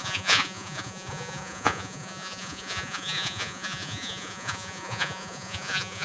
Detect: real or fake fake